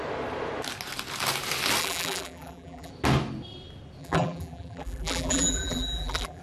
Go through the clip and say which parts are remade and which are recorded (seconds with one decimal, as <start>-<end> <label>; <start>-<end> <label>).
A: 0.0-1.8 recorded; 1.8-2.9 remade; 2.9-4.0 recorded; 4.0-6.4 remade